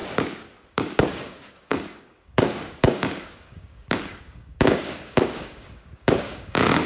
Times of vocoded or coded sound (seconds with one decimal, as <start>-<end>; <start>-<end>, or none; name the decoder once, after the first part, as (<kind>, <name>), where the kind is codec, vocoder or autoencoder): 0.7-6.9 (codec, DAC)